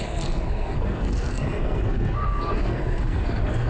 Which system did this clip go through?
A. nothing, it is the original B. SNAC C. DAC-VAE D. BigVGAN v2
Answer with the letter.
B